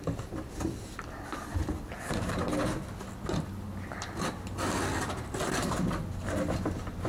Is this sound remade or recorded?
recorded